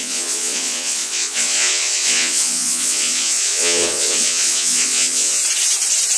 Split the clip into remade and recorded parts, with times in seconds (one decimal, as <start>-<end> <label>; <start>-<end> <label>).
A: 0.0-5.4 remade; 5.4-6.2 recorded